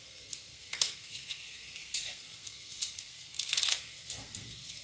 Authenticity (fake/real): fake